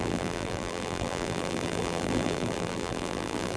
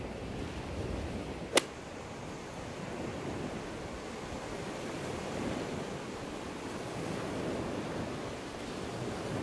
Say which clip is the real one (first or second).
second